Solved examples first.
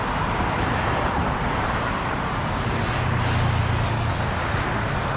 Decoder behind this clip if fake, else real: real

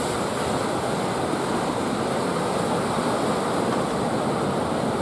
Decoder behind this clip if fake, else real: real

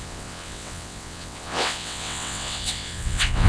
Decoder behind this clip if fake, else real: fake, vocoder, WaveNeXt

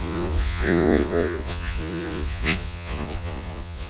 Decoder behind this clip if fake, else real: fake, vocoder, Vocos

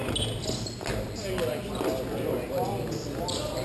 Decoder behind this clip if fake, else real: real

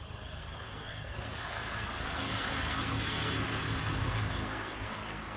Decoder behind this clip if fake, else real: fake, codec, SNAC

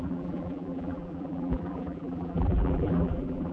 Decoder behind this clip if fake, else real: fake, vocoder, BigVGAN v2